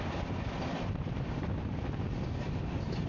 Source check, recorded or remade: recorded